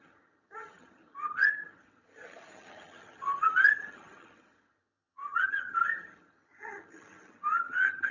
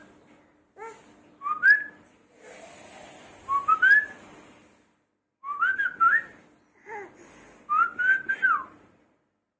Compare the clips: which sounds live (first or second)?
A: second